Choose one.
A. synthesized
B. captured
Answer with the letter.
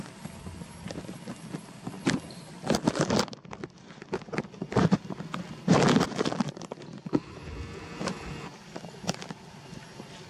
B